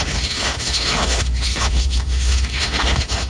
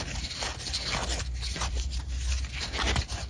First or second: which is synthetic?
first